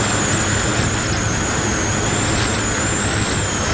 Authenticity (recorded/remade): recorded